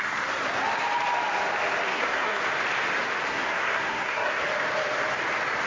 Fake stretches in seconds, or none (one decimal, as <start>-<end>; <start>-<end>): 1.9-2.4; 3.3-4.4